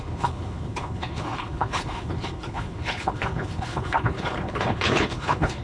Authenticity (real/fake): fake